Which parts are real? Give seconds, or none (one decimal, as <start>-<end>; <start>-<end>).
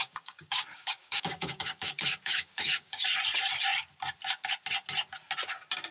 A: 3.0-5.9